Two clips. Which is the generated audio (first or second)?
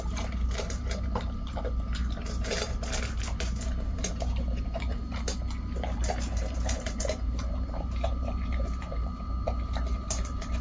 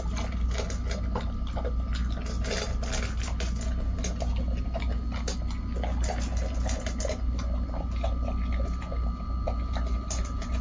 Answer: first